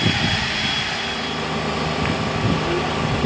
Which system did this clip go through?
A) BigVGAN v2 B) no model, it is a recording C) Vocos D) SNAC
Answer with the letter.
B